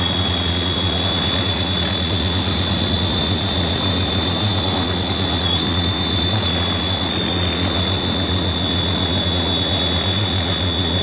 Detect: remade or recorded remade